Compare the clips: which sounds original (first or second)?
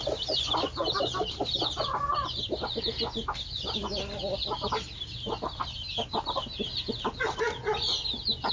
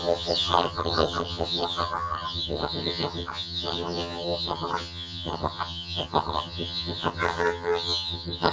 first